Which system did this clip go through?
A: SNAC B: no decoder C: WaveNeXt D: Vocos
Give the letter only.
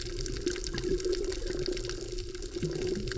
B